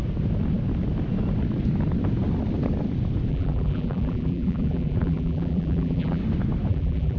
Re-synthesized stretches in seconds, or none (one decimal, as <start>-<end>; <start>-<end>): 3.3-6.2; 6.7-7.2